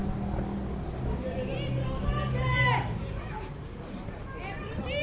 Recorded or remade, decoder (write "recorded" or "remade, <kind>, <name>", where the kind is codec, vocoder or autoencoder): recorded